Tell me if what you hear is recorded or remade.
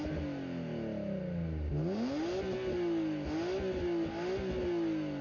recorded